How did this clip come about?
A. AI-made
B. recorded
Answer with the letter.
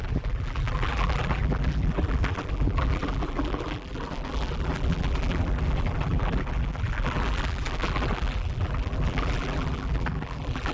A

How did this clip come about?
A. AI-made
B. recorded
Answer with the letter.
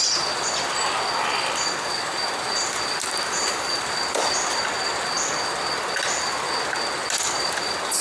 B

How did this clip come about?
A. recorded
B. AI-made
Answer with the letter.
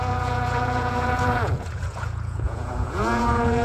B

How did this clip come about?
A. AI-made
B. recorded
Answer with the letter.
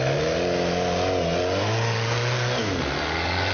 B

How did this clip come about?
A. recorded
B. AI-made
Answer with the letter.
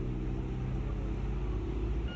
A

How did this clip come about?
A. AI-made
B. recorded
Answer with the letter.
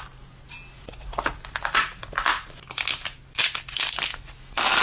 B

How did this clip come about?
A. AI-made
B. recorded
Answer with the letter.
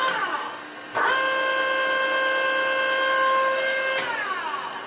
B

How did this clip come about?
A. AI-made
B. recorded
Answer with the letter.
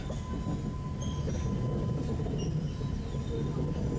B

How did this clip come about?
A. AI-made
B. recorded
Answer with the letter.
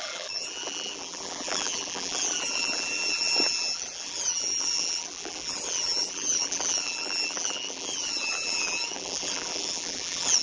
A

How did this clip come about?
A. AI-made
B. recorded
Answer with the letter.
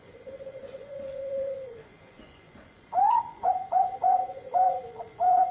A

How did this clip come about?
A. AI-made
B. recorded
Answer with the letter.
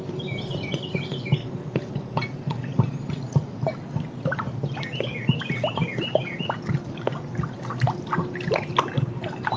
B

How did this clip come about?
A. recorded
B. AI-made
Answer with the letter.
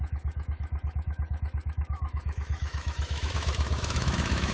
B